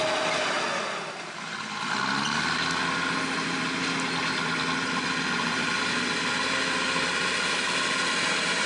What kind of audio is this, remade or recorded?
recorded